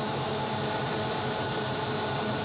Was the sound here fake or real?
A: real